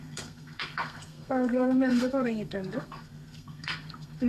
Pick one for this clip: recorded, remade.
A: remade